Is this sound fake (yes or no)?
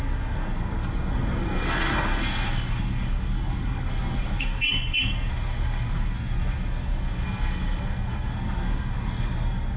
yes